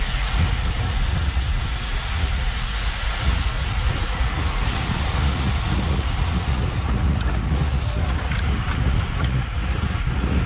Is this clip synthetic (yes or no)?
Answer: yes